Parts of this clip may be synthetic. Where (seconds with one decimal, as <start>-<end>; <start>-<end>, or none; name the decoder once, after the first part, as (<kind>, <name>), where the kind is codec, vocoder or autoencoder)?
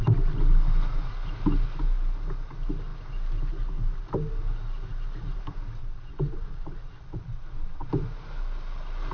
5.8-7.9 (vocoder, Vocos)